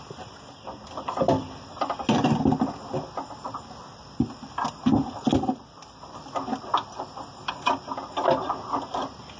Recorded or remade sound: recorded